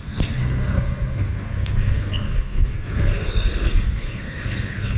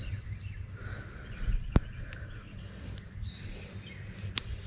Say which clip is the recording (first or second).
second